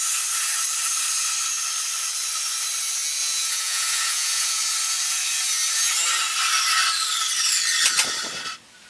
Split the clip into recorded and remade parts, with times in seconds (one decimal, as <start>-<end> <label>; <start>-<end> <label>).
0.0-3.2 recorded; 3.2-4.6 remade; 4.6-8.9 recorded